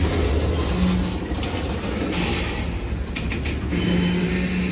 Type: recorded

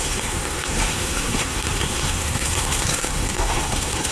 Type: remade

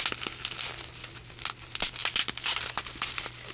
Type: recorded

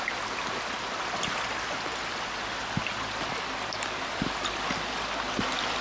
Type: recorded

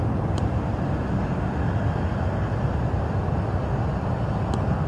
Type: recorded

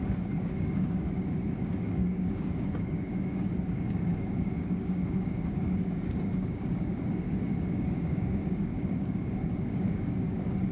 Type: remade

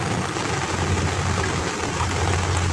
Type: recorded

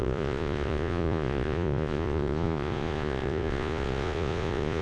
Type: remade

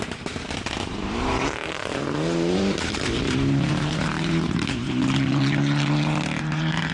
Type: remade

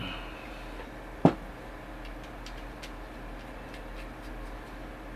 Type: recorded